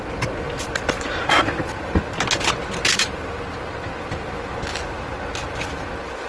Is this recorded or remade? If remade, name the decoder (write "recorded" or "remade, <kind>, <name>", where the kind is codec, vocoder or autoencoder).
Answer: recorded